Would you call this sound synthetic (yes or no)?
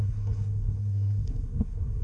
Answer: yes